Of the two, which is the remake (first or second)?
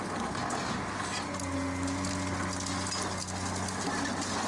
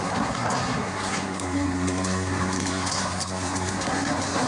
second